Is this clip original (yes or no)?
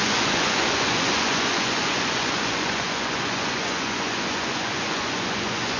no